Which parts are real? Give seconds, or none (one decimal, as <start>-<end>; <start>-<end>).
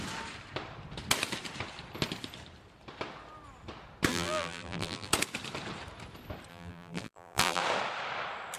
0.0-4.1; 5.1-6.5; 7.6-8.6